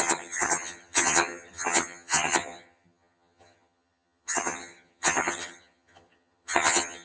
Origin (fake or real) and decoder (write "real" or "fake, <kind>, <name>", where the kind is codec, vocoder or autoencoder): fake, vocoder, HiFi-GAN